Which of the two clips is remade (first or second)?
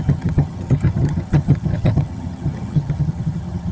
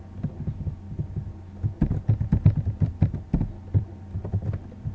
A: first